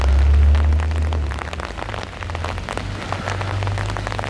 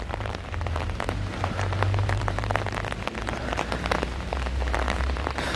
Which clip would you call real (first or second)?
first